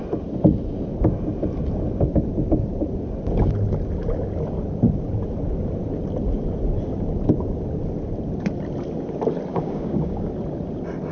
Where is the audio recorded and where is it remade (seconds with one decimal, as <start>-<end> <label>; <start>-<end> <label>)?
0.0-9.5 recorded; 9.5-10.3 remade; 10.3-11.1 recorded